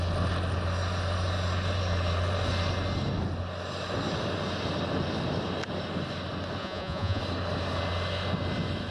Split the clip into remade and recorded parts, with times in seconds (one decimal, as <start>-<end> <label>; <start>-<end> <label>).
0.0-6.6 recorded; 6.6-7.2 remade; 7.2-8.9 recorded